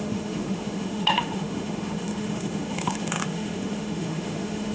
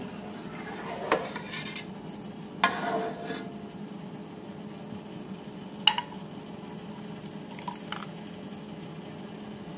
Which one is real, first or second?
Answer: second